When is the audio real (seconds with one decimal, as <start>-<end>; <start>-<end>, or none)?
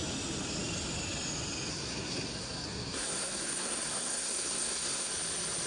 0.0-1.7; 5.1-5.7